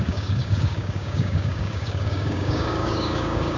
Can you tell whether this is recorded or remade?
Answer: remade